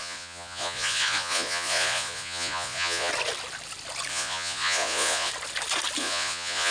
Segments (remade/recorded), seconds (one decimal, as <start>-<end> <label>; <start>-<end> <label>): 0.0-3.1 remade; 3.1-4.1 recorded; 4.1-5.3 remade; 5.3-6.0 recorded; 6.0-6.7 remade